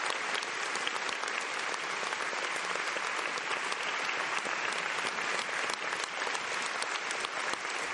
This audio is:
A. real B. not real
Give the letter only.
A